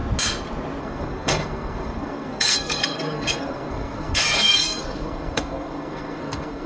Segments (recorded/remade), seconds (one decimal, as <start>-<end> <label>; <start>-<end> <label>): 0.0-0.8 recorded; 0.8-6.7 remade